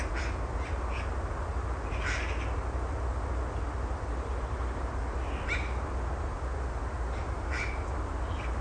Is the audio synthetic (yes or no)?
no